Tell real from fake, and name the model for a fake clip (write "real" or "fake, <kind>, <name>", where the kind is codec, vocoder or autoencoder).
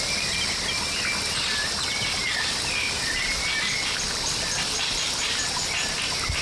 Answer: real